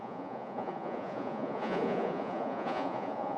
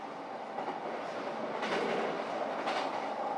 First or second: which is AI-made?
first